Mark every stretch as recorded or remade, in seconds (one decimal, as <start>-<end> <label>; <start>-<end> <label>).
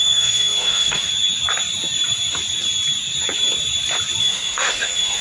0.0-1.1 remade; 1.1-4.2 recorded; 4.2-5.2 remade